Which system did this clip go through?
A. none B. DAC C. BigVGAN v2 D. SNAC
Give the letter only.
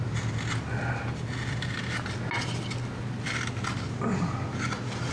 A